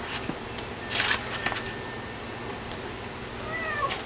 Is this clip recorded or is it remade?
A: remade